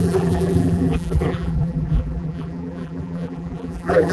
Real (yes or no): no